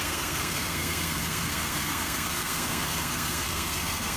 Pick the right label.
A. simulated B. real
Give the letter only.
A